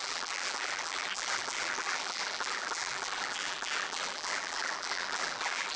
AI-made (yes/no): yes